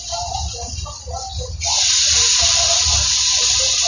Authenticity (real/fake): real